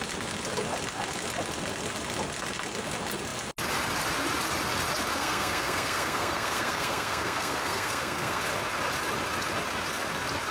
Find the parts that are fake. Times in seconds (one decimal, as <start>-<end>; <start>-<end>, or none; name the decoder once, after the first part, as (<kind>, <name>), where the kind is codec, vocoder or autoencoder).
5.2-8.4 (codec, SNAC)